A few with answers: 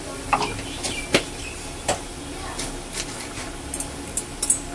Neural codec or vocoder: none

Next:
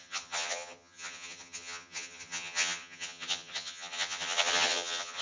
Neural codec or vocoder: vocoder, HiFi-GAN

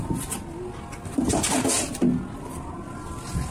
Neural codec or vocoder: none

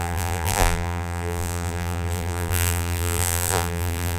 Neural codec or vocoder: vocoder, BigVGAN v2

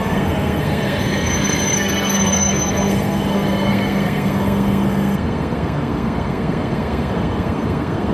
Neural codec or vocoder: codec, SNAC